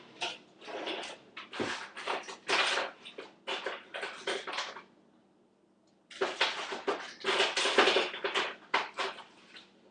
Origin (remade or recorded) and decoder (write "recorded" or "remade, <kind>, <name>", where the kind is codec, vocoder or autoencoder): recorded